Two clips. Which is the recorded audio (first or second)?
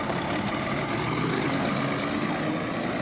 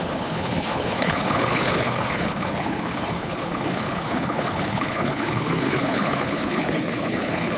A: first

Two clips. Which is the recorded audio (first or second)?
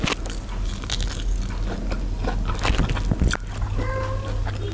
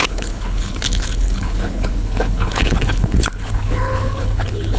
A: first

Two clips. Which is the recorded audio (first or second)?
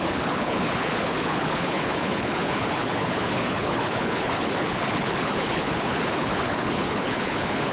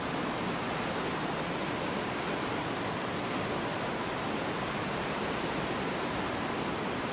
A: second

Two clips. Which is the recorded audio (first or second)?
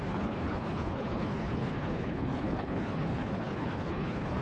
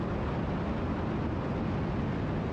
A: second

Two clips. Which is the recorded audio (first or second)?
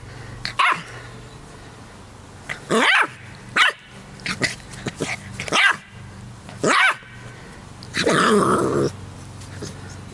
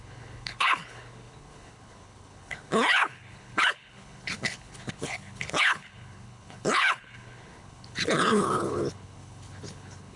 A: first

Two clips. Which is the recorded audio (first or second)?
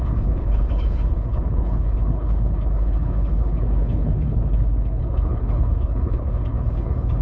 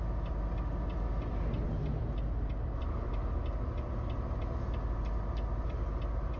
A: second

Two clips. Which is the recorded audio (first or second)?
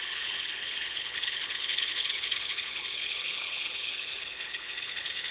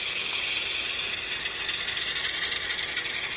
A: second